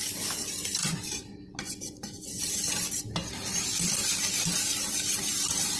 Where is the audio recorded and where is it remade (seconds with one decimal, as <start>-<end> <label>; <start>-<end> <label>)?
0.0-0.8 recorded; 0.8-2.4 remade; 2.4-5.8 recorded